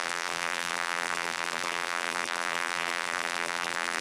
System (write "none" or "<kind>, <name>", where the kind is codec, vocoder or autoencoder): vocoder, BigVGAN v2